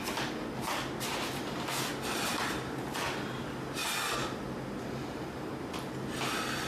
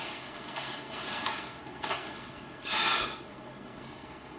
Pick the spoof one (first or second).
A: second